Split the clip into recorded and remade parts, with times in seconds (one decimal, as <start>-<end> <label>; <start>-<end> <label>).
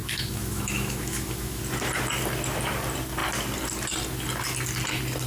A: 0.0-1.6 remade; 1.6-5.3 recorded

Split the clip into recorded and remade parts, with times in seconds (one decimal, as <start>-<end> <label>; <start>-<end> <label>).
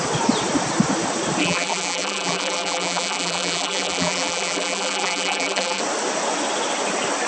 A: 0.0-1.4 recorded; 1.4-5.8 remade; 5.8-7.3 recorded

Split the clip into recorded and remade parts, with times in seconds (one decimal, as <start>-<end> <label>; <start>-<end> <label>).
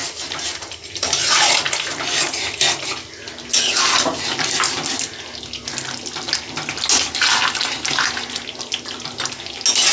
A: 0.0-1.5 remade; 1.5-9.9 recorded